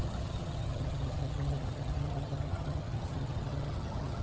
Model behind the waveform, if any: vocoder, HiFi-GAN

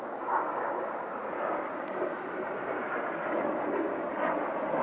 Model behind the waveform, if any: none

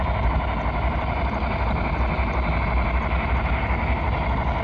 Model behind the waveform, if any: none